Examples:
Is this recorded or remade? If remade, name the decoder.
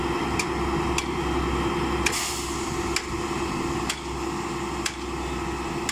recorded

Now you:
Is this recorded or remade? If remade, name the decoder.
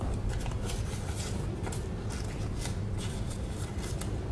recorded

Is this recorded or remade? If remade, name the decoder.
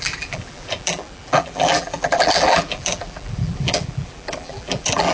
remade, vocoder, BigVGAN v2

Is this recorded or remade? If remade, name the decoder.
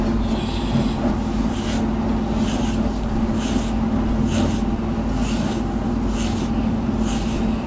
recorded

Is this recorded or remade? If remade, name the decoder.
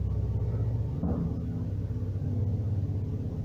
recorded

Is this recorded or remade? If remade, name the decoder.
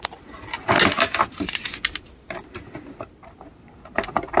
recorded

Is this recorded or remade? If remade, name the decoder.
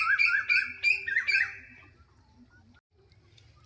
recorded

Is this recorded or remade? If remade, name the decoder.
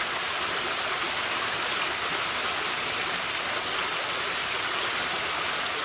recorded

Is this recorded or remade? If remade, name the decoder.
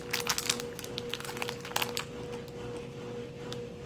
recorded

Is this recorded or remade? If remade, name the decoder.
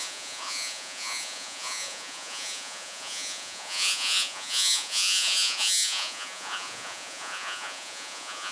remade, vocoder, Vocos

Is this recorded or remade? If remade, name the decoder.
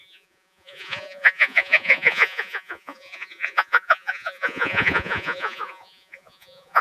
remade, vocoder, Vocos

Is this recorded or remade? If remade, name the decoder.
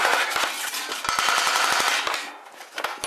recorded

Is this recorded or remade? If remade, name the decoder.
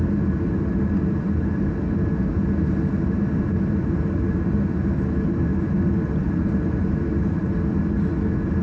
recorded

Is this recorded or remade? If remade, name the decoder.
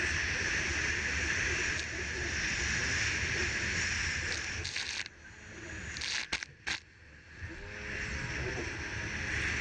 recorded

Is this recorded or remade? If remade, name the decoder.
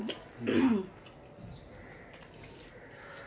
recorded